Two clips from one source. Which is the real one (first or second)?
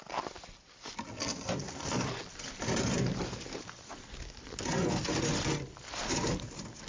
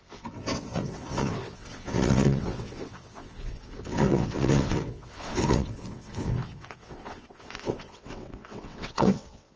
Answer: first